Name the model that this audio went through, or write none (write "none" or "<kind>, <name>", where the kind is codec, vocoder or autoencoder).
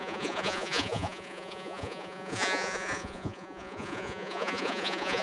vocoder, Vocos